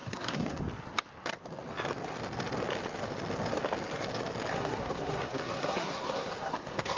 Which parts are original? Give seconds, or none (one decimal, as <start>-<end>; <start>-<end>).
0.6-4.5